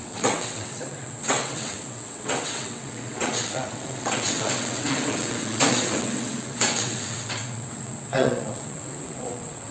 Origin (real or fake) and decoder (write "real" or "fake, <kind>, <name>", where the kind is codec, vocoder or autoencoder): fake, vocoder, WaveNeXt